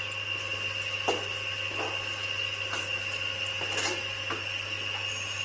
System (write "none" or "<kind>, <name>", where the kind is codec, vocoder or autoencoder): none